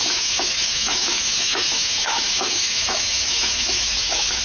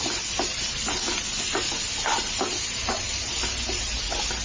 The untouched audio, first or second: second